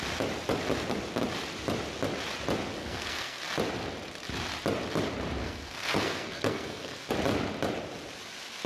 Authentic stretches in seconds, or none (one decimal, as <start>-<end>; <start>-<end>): 0.0-2.8; 3.4-5.4; 7.1-8.7